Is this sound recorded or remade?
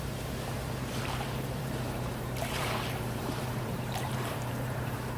remade